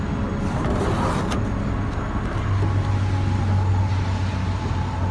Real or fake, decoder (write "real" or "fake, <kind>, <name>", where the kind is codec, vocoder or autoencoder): real